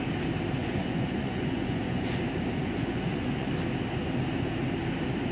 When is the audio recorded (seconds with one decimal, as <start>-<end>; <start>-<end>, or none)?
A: 0.0-0.6; 2.2-2.6; 3.5-5.3